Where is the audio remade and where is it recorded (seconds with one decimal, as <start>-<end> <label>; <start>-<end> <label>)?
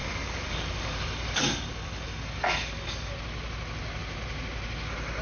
0.0-3.1 remade; 3.1-5.2 recorded